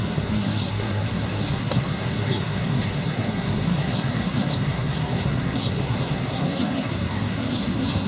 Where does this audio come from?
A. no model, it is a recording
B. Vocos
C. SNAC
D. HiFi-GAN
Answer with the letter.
C